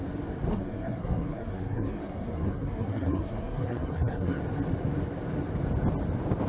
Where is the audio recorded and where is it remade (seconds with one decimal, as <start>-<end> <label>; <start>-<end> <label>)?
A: 0.0-0.5 recorded; 0.5-4.4 remade; 4.4-6.5 recorded